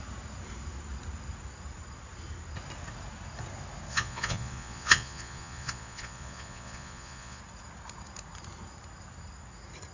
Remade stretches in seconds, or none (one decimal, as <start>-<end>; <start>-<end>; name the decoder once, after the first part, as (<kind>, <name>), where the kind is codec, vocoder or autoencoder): 3.9-7.4 (vocoder, Vocos)